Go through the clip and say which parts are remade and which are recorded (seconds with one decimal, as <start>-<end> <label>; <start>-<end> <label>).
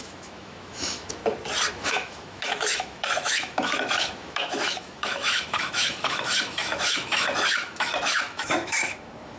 0.0-1.2 remade; 1.2-1.7 recorded; 1.7-9.4 remade